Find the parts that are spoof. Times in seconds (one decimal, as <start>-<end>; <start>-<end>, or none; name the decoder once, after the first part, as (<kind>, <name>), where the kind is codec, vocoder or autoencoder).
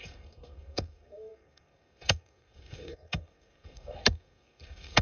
0.0-5.0 (codec, SNAC)